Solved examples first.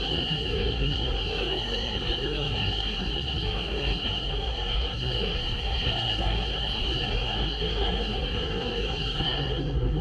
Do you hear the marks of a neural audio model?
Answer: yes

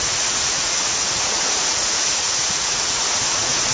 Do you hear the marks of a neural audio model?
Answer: yes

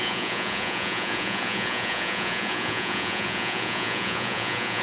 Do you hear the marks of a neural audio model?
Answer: yes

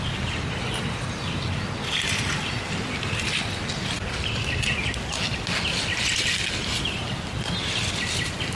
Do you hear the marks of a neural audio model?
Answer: no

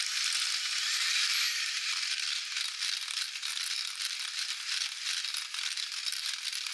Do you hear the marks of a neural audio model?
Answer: yes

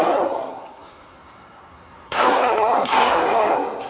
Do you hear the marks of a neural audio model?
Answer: yes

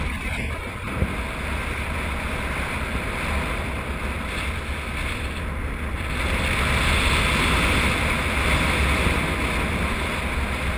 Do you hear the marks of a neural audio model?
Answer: no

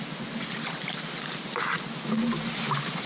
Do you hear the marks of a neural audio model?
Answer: no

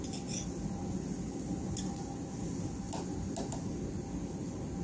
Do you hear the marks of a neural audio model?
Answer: no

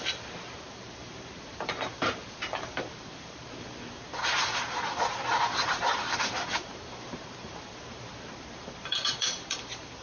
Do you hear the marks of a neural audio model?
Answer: yes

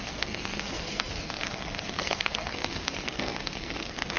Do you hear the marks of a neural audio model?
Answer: yes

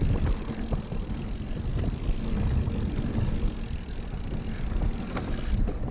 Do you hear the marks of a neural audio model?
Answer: no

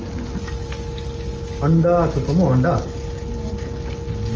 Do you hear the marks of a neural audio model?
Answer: no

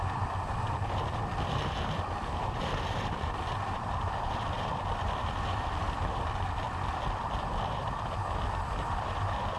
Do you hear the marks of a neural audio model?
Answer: yes